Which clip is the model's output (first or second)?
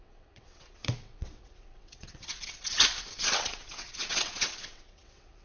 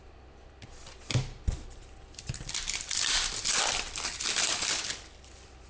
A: first